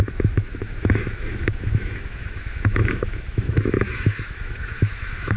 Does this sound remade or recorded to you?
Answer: remade